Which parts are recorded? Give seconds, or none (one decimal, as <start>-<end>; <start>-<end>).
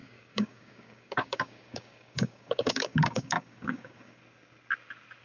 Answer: 4.2-5.2